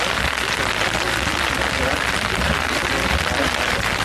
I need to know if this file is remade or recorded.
recorded